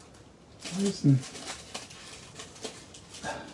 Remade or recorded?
recorded